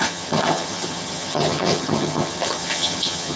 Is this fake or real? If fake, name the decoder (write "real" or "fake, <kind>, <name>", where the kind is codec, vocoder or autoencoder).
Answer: fake, vocoder, HiFi-GAN